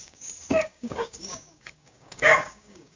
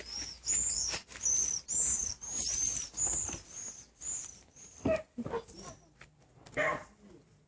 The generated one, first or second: first